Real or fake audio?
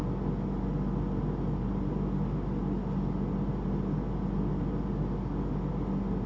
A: real